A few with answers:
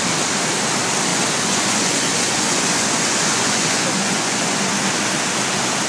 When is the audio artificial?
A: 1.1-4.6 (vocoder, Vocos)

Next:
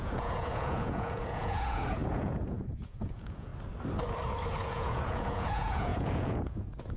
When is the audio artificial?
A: 0.0-3.5 (vocoder, Vocos); 4.6-7.0

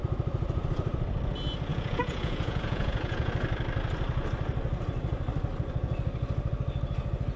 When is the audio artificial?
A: 1.7-3.3 (vocoder, Vocos)

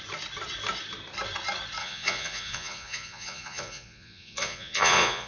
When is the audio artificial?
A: 1.8-5.3 (vocoder, Vocos)